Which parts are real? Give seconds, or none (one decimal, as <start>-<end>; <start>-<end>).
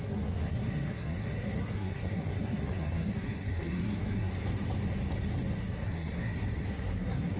4.3-5.6